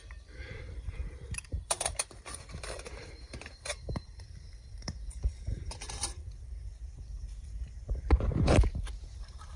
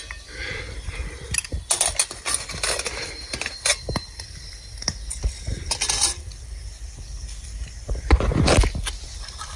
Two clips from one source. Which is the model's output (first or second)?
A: first